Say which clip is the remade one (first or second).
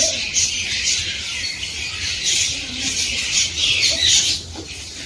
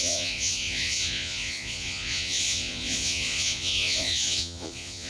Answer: second